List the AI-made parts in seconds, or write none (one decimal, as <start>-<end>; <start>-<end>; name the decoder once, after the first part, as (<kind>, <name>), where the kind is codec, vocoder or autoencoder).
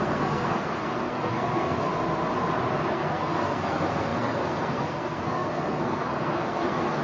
0.0-1.9 (codec, SNAC); 2.9-7.0